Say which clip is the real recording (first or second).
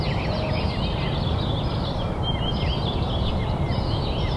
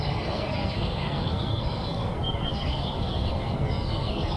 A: first